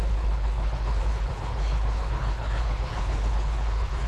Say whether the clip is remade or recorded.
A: remade